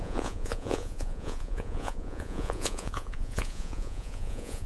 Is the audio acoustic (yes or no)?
no